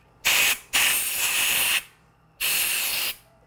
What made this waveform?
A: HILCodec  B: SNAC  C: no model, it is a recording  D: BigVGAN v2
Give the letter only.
D